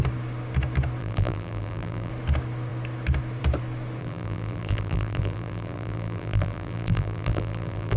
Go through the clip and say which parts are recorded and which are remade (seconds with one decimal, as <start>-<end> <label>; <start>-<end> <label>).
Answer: 0.0-1.0 recorded; 1.0-2.1 remade; 2.1-4.0 recorded; 4.0-8.0 remade